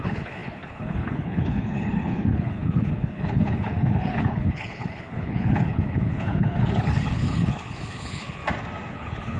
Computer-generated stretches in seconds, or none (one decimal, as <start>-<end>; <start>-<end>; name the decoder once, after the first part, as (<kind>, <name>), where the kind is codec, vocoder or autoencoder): 0.0-8.4 (codec, HILCodec); 8.9-9.4